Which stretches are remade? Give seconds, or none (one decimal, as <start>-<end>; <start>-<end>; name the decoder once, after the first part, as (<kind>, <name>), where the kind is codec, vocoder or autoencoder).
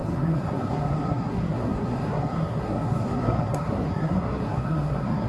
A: 0.0-5.3 (codec, SNAC)